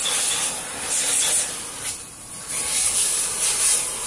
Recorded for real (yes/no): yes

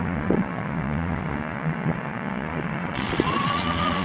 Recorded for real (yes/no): no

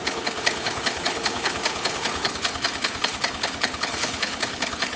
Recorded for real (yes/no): no